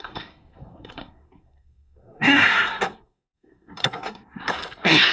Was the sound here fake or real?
fake